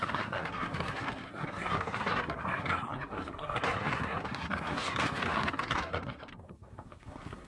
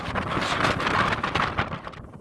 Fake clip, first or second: first